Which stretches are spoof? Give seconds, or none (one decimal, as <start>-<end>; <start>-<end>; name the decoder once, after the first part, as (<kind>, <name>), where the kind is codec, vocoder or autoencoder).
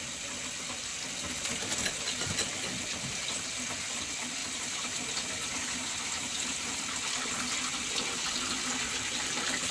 4.4-6.9 (vocoder, BigVGAN v2)